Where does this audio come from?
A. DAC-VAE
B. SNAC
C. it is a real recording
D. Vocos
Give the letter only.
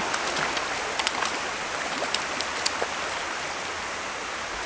C